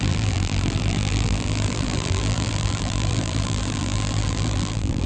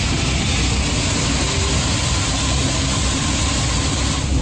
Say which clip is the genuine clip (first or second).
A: second